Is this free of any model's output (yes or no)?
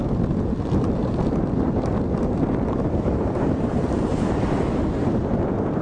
yes